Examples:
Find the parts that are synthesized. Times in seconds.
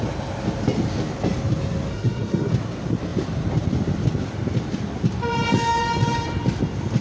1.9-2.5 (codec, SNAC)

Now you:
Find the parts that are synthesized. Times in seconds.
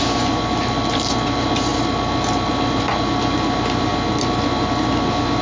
none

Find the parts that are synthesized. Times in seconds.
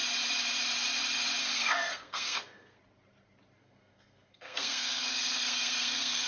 1.4-2.8 (codec, SNAC); 3.6-6.3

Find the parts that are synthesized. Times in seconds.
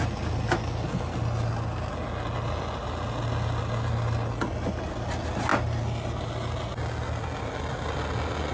none